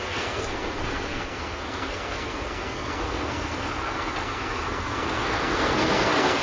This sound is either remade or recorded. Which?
remade